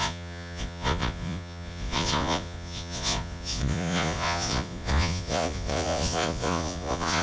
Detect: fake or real fake